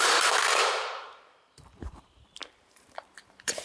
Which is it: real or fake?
fake